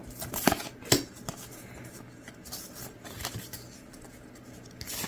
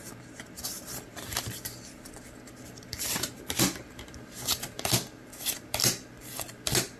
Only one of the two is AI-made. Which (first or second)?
second